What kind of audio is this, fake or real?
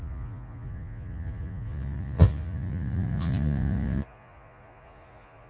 fake